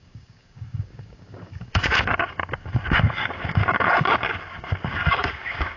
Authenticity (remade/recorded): remade